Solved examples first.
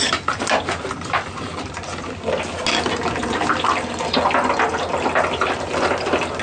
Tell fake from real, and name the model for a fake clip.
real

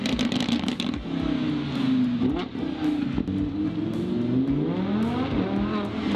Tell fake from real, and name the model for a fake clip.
real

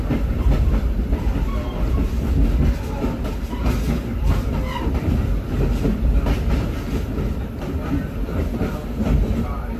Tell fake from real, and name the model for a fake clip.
real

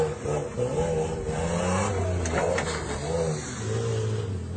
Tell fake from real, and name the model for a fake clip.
real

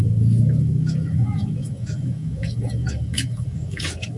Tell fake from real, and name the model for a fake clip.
fake, autoencoder, DAC-VAE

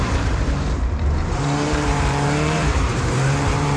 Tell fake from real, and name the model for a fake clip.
fake, vocoder, BigVGAN v2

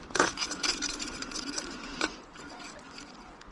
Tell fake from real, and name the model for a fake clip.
fake, vocoder, Vocos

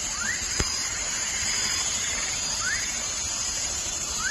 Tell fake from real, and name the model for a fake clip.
fake, vocoder, BigVGAN v2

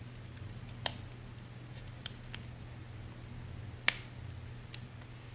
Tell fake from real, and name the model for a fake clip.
real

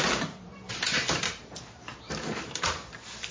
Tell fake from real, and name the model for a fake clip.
fake, vocoder, BigVGAN v2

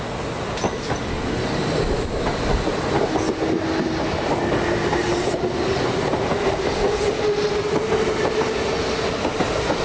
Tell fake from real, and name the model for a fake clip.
real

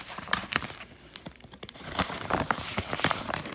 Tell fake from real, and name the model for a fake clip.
fake, vocoder, BigVGAN v2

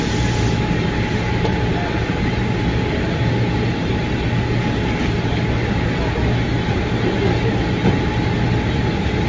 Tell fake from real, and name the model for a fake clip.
real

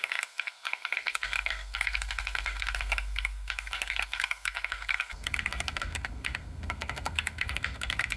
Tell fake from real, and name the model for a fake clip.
fake, codec, SNAC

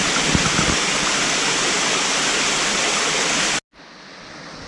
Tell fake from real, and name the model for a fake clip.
real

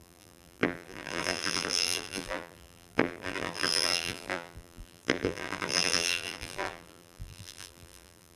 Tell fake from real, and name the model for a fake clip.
fake, vocoder, BigVGAN v2